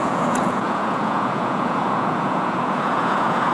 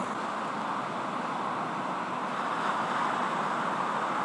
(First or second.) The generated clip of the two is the first